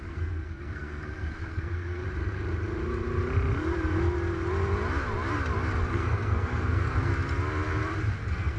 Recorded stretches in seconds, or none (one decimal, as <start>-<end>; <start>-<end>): 2.0-5.9; 7.1-8.1